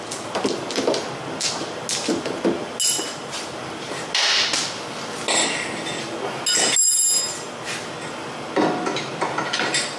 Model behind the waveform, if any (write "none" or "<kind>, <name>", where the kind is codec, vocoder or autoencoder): none